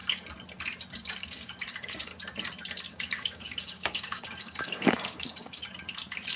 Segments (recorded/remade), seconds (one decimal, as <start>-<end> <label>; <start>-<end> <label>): 0.0-1.2 recorded; 1.2-2.1 remade; 2.1-2.9 recorded; 2.9-5.6 remade; 5.6-6.4 recorded